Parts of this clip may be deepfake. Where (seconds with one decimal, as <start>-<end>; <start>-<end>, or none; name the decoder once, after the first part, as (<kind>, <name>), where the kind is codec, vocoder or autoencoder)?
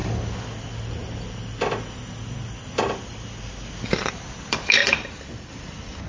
3.7-6.1 (vocoder, BigVGAN v2)